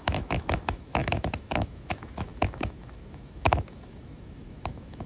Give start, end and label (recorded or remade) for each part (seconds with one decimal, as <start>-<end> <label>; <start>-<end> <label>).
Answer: 0.0-5.1 remade